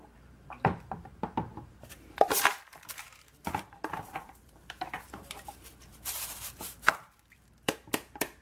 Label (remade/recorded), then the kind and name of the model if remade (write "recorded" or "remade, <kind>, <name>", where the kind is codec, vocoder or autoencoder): remade, vocoder, BigVGAN v2